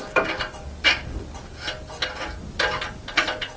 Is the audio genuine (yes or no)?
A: yes